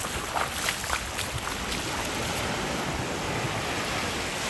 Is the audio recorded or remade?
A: recorded